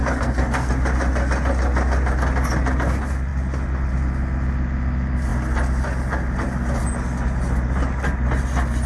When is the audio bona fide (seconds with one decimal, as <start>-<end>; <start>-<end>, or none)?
0.7-8.9